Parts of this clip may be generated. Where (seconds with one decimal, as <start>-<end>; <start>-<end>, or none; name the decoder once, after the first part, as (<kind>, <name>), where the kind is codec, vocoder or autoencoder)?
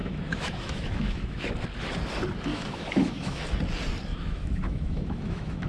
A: 0.0-1.5 (autoencoder, DAC-VAE); 2.5-3.4; 4.1-5.7